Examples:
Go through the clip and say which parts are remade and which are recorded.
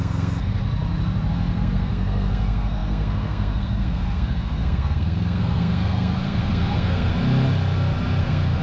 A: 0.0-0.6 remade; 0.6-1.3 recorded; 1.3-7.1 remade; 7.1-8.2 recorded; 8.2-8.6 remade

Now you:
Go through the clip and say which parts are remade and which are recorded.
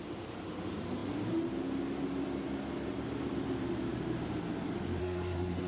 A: 0.0-5.0 recorded; 5.0-5.7 remade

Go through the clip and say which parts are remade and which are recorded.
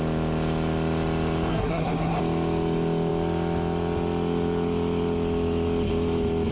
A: 0.0-1.5 recorded; 1.5-2.2 remade; 2.2-6.5 recorded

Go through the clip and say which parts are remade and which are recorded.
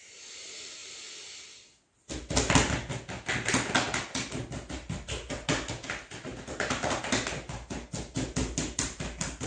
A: 0.0-9.5 recorded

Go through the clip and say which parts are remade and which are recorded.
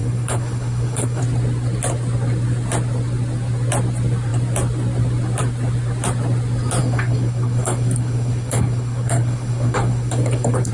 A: 0.0-1.2 remade; 1.2-6.8 recorded; 6.8-10.7 remade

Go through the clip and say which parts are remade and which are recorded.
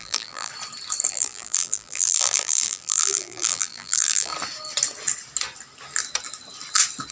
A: 0.0-0.5 remade; 0.5-1.1 recorded; 1.1-4.3 remade; 4.3-7.1 recorded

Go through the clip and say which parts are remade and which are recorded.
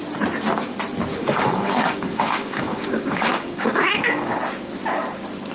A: 0.0-1.1 recorded; 1.1-4.4 remade; 4.4-5.5 recorded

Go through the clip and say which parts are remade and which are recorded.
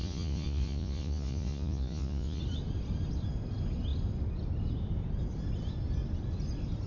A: 0.0-2.4 remade; 2.4-6.9 recorded